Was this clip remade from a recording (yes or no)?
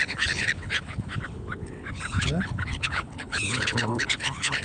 yes